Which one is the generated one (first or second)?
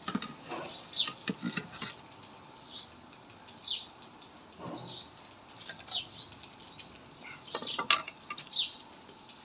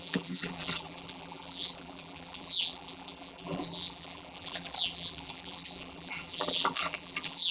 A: second